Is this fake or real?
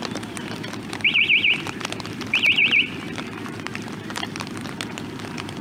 fake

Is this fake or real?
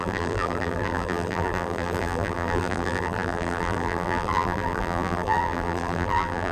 fake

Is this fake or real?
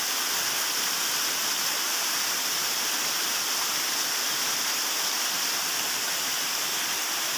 real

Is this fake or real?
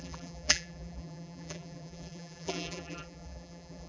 fake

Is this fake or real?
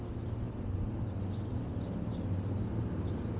real